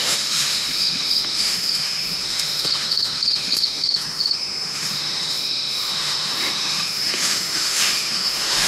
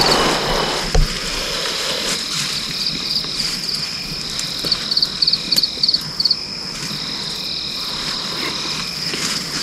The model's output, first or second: first